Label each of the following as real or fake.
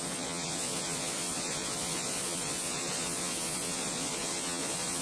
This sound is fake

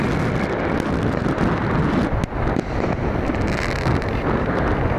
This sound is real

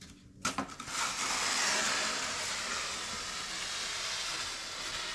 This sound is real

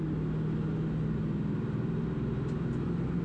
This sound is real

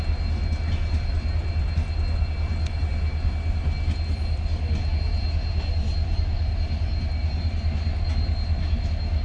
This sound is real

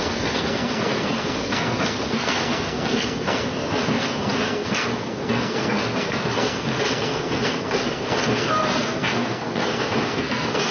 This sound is fake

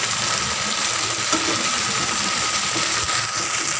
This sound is real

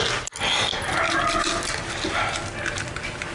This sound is real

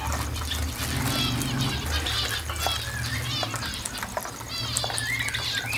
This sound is real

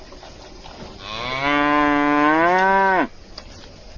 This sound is real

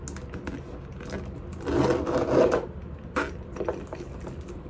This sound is real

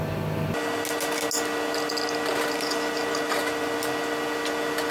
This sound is real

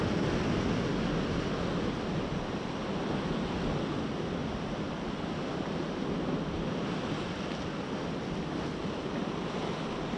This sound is real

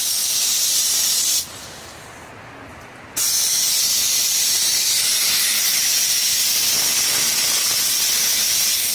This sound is real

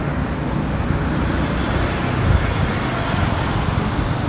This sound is real